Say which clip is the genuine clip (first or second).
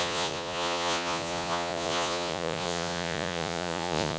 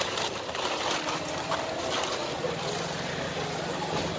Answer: second